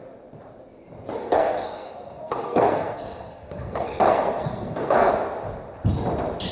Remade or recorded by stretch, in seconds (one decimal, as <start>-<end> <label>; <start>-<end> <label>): 0.0-1.2 recorded; 1.2-5.1 remade; 5.1-6.5 recorded